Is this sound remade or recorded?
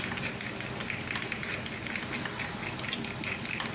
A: recorded